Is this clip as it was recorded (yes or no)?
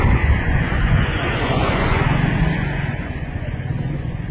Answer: no